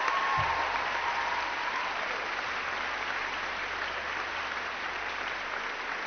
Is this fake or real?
real